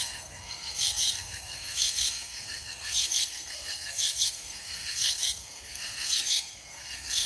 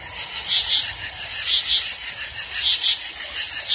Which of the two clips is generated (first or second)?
first